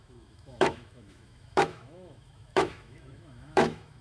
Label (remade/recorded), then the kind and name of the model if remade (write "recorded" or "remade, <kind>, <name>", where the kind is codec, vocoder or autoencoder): remade, autoencoder, DAC-VAE